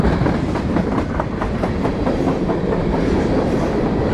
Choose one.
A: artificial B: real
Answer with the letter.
A